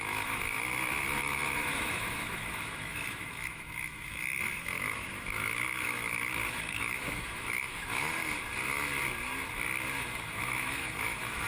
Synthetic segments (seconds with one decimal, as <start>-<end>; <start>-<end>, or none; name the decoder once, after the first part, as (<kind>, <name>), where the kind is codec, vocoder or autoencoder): 0.0-8.2 (autoencoder, DAC-VAE); 10.0-11.5